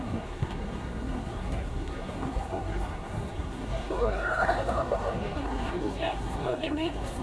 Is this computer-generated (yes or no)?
yes